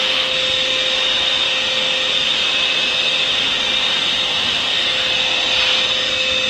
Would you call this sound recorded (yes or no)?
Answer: yes